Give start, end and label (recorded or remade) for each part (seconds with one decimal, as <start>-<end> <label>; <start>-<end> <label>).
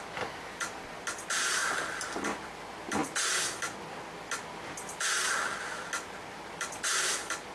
0.0-7.5 recorded